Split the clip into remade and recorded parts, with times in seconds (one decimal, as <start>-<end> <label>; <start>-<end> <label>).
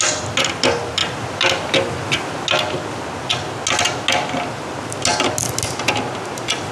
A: 0.0-6.7 recorded